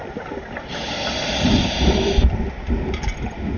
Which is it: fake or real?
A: real